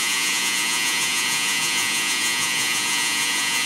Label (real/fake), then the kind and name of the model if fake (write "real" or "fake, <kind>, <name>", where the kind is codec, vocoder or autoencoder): fake, vocoder, Vocos